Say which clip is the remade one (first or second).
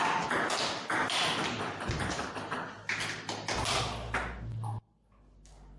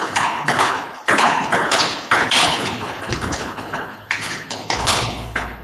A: second